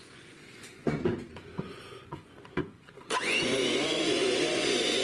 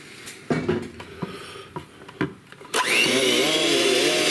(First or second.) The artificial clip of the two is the first